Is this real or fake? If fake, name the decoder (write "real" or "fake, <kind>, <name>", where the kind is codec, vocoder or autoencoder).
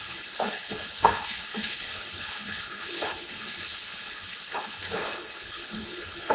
fake, codec, HILCodec